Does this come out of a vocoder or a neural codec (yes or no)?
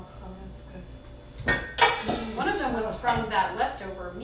no